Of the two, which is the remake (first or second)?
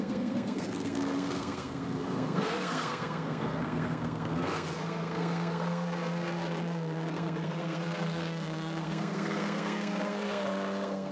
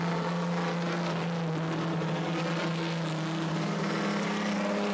first